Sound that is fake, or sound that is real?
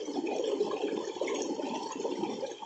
fake